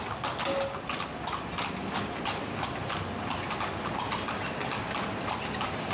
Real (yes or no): yes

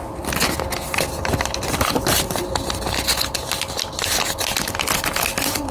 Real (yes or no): yes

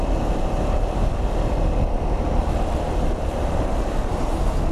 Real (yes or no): yes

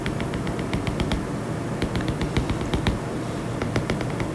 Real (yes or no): yes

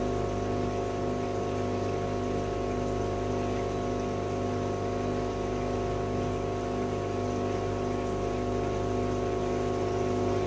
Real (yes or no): yes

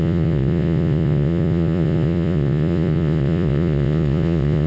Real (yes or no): no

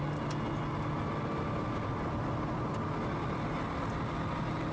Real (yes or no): yes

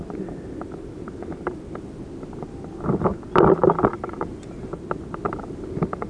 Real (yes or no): yes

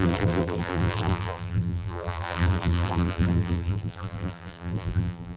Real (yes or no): no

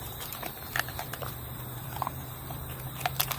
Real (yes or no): no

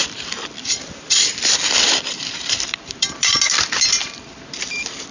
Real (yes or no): no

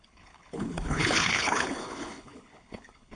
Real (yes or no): no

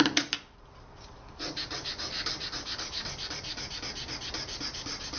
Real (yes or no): yes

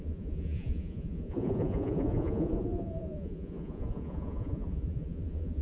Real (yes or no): no